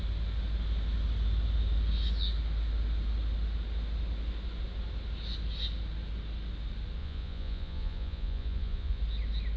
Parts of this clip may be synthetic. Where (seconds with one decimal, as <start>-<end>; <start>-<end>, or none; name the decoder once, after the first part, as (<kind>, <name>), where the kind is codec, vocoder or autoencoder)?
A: 7.0-9.0 (vocoder, Vocos)